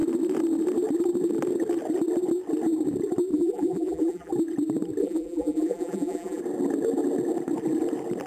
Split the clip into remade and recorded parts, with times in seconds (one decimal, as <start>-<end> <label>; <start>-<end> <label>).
0.0-3.3 recorded; 3.3-4.3 remade; 4.3-5.0 recorded; 5.0-6.4 remade; 6.4-8.3 recorded